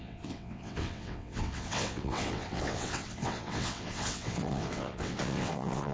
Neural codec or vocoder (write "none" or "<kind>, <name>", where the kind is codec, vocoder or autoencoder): vocoder, WaveNeXt